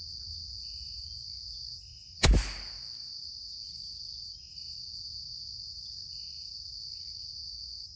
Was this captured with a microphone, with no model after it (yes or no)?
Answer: yes